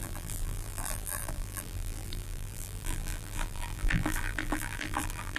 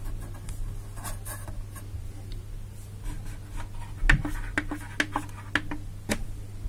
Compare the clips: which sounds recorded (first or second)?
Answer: second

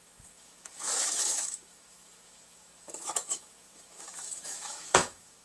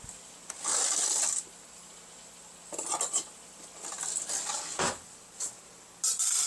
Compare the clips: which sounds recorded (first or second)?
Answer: second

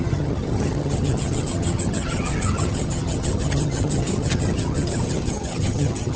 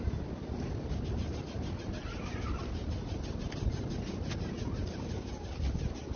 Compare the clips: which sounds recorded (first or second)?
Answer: second